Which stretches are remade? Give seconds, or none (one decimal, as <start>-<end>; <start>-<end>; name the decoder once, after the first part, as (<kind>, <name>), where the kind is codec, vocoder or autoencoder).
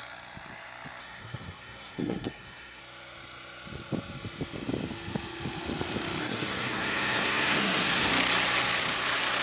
1.0-2.8 (codec, SNAC); 6.2-8.1